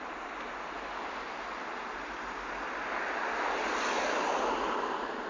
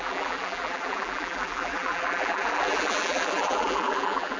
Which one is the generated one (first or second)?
second